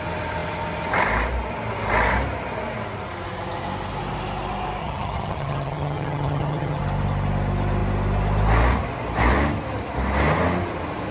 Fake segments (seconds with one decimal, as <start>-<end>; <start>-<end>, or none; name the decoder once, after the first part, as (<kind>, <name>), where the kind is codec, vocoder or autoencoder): 4.8-6.8 (vocoder, HiFi-GAN)